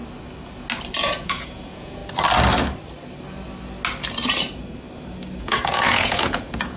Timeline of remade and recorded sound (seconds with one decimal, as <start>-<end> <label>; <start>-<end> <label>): 0.0-1.0 recorded; 1.0-2.0 remade; 2.0-5.4 recorded; 5.4-6.8 remade

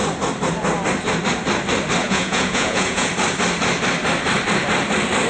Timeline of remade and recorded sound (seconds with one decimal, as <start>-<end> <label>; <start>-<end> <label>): 0.0-2.0 recorded; 2.0-3.1 remade; 3.1-5.3 recorded